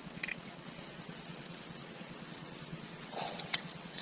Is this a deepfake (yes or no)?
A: yes